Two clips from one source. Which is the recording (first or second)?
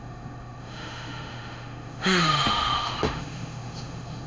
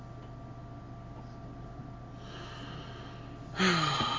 second